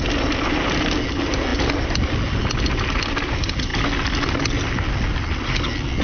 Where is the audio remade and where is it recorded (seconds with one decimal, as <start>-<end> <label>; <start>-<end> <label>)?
0.0-6.0 recorded